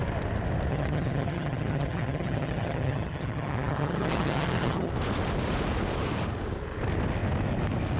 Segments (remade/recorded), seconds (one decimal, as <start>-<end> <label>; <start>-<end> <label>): 0.0-0.7 recorded; 0.7-4.9 remade; 4.9-8.0 recorded